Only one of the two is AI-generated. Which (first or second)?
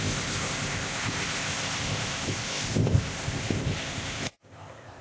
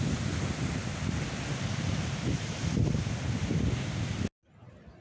first